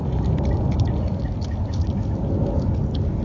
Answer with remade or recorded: recorded